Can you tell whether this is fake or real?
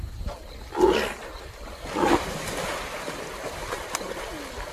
real